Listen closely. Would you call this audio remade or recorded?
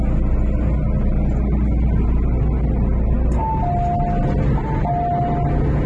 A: recorded